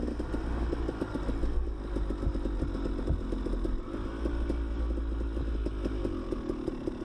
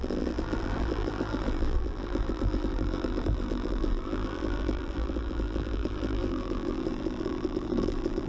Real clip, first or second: first